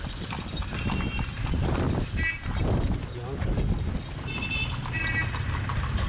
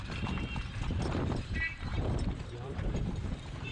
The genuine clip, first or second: first